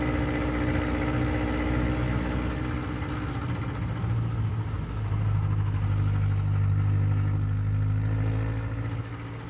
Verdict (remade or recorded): recorded